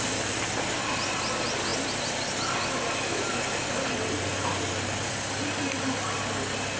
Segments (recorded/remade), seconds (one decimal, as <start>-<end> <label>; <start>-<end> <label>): 0.0-6.8 recorded